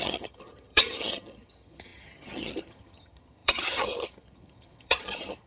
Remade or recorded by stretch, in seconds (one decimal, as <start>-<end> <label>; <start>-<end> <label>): 0.0-5.5 remade